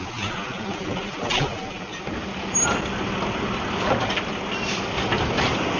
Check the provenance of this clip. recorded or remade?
recorded